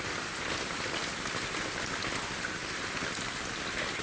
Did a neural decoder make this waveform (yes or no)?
no